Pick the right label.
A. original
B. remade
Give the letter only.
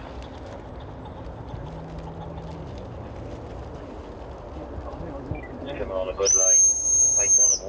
A